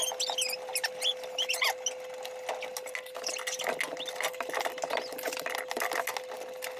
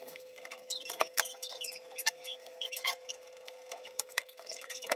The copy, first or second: second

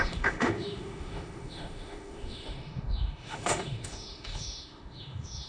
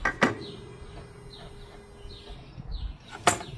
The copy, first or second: first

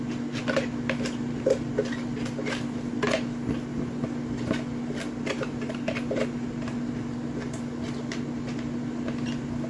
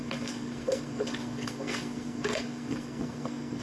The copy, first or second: second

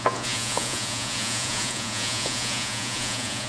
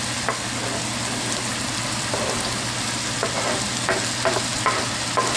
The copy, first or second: first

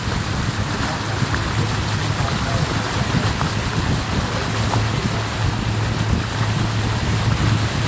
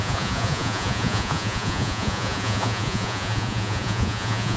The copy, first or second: second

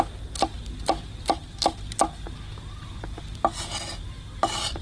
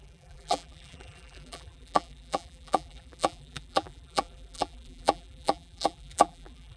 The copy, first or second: second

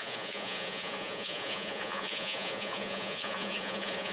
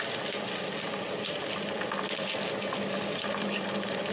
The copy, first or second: first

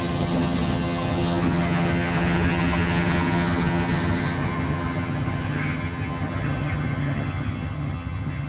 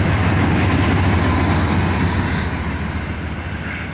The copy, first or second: first